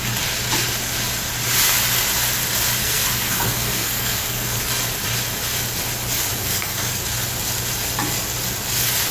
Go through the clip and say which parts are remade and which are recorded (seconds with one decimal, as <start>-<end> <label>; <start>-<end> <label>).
0.0-2.8 recorded; 2.8-4.6 remade; 4.6-6.4 recorded; 6.4-7.0 remade; 7.0-9.1 recorded